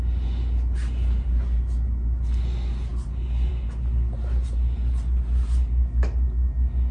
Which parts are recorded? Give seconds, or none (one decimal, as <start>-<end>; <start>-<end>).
0.0-6.9